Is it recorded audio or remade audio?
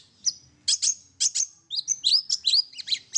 recorded